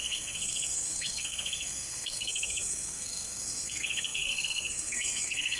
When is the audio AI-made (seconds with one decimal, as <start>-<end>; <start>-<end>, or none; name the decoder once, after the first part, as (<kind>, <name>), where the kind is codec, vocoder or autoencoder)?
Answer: 0.0-5.6 (codec, SNAC)